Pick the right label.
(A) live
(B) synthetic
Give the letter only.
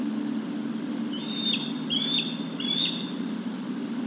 A